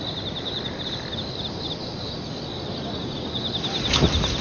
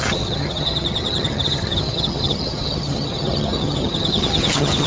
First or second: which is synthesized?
second